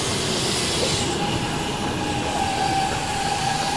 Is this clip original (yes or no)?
yes